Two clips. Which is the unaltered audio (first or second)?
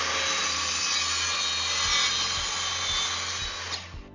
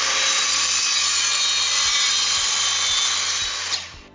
first